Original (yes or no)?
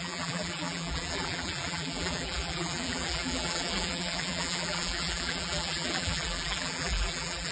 no